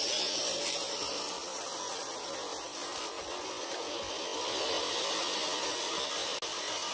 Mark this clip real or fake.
real